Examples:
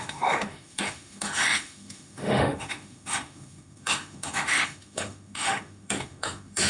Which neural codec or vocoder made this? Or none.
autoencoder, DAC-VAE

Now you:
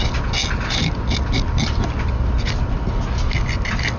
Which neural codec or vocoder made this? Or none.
none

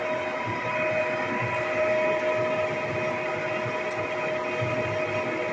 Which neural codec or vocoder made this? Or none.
none